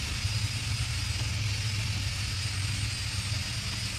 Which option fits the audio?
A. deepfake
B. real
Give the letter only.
B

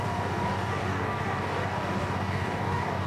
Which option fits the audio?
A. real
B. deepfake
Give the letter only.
B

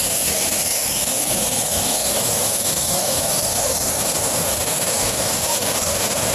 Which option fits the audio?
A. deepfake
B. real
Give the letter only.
A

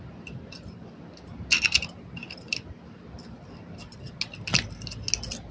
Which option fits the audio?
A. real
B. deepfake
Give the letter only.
A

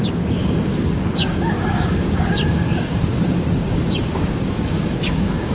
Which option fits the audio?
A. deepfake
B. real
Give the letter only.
A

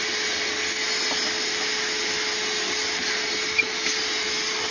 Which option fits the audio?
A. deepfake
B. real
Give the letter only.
B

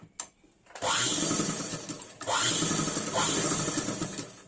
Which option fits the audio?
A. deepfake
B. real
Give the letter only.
B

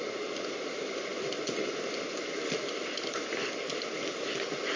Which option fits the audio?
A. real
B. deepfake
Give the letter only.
A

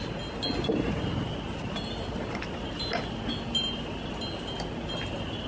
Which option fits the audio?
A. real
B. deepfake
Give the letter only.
A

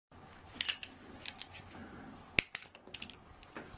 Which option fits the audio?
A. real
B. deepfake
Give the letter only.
A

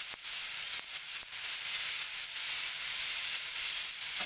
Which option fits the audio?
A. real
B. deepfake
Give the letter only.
A